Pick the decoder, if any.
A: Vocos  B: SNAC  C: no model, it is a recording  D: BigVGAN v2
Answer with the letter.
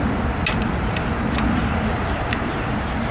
C